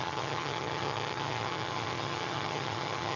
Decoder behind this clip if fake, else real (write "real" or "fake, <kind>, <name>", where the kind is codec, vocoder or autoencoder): fake, vocoder, HiFi-GAN